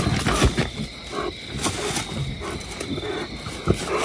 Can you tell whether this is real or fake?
real